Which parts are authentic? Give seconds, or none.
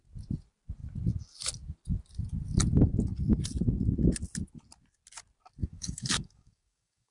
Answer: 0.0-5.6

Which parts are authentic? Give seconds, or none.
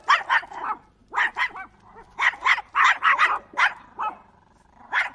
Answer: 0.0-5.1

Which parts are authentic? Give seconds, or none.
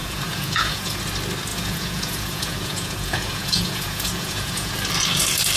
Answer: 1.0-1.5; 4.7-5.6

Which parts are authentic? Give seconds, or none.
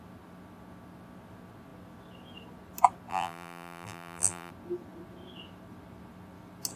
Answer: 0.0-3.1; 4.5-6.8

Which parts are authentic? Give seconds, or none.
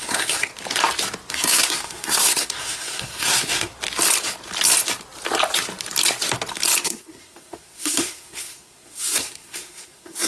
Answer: 0.5-1.3; 3.7-6.8